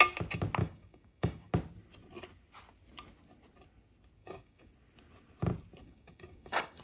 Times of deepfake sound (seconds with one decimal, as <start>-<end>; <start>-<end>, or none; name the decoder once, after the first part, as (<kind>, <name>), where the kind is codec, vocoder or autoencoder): 0.6-1.5 (codec, DAC); 4.2-4.7; 5.8-6.8